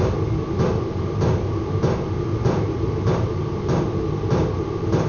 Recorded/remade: recorded